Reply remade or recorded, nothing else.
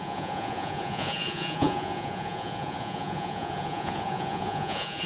remade